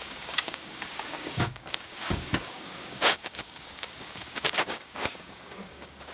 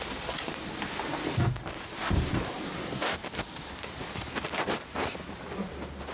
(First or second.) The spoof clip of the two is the first